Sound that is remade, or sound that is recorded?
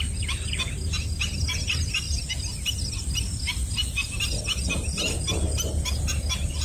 recorded